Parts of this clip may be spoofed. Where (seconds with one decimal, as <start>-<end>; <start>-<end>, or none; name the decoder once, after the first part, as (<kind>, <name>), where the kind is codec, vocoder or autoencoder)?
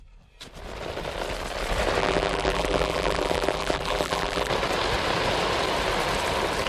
2.0-4.5 (vocoder, BigVGAN v2)